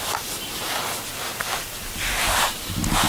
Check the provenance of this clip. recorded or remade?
recorded